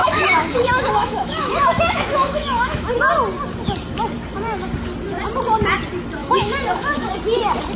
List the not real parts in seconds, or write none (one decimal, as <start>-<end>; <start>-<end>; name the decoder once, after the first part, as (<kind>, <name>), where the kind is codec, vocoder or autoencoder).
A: 0.0-2.9 (autoencoder, DAC-VAE); 6.2-7.1

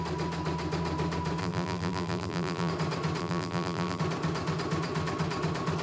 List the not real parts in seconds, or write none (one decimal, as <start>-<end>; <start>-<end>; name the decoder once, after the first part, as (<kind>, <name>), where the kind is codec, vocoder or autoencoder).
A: 1.4-2.7 (vocoder, BigVGAN v2); 3.2-4.0

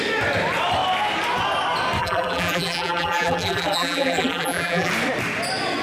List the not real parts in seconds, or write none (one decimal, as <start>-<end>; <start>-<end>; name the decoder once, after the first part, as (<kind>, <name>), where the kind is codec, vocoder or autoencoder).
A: 2.0-4.9 (vocoder, BigVGAN v2)

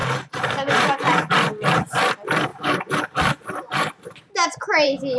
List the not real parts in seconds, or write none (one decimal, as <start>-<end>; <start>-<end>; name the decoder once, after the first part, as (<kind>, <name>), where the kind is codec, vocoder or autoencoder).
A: 0.0-1.3 (vocoder, BigVGAN v2); 2.5-3.0

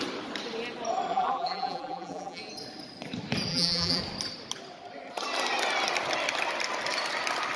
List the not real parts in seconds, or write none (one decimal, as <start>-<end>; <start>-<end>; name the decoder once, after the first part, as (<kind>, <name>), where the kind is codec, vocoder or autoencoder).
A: 1.1-2.4 (vocoder, BigVGAN v2); 3.5-4.0

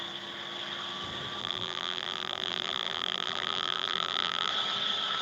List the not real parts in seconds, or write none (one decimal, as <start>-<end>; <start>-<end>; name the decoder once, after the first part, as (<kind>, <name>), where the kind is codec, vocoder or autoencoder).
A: 1.4-4.5 (vocoder, BigVGAN v2)